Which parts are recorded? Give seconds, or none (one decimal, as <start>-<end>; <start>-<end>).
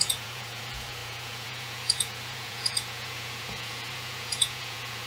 none